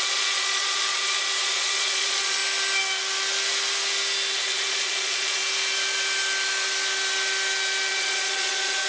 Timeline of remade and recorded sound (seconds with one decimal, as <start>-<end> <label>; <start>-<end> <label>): 0.0-2.4 remade; 2.4-4.3 recorded; 4.3-5.4 remade; 5.4-7.9 recorded; 7.9-8.9 remade